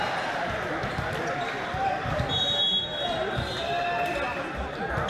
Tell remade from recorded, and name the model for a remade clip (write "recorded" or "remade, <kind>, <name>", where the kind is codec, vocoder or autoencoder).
recorded